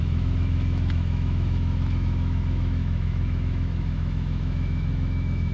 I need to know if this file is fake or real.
fake